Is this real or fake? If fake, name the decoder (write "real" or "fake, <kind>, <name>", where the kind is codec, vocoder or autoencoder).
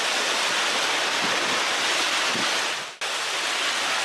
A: real